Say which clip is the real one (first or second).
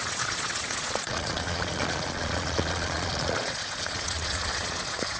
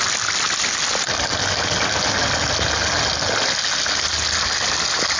second